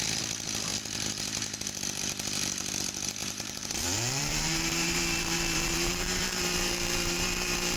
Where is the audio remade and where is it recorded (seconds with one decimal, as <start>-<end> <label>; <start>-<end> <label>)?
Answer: 0.0-3.2 recorded; 3.2-7.8 remade